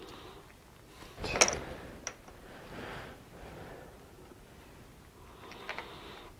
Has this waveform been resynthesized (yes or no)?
no